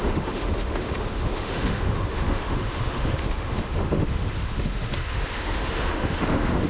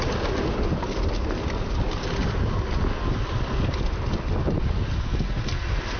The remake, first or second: first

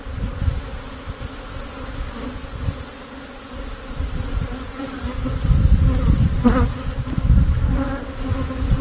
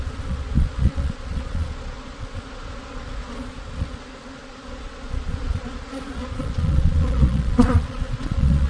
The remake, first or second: second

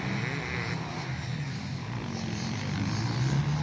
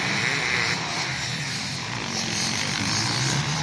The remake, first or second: second